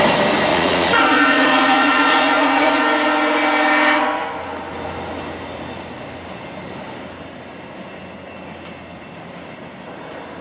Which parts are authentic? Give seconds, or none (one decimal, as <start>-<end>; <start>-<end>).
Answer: 0.0-0.5; 2.8-10.4